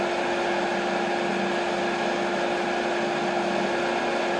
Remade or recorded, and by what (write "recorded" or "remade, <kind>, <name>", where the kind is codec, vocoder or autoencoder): recorded